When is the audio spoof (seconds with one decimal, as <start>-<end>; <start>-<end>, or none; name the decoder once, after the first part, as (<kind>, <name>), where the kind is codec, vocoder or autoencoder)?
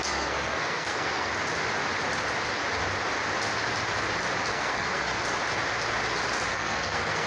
0.0-1.3 (codec, SNAC); 4.5-5.2; 6.5-7.3